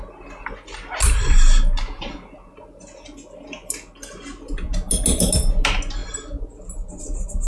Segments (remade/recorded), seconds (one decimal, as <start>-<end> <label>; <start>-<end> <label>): 0.0-7.5 recorded